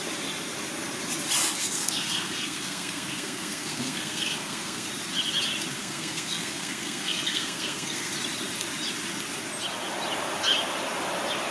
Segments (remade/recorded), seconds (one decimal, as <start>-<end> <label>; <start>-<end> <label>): 0.0-1.6 recorded; 1.6-4.9 remade; 4.9-5.8 recorded; 5.8-8.1 remade; 8.1-11.5 recorded